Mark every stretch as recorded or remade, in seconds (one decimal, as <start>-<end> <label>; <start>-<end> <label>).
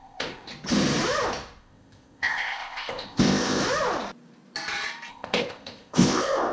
0.0-0.5 remade; 0.5-1.6 recorded; 1.6-3.6 remade; 3.6-5.1 recorded; 5.1-6.5 remade